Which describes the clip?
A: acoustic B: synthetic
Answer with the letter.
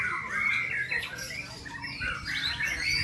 A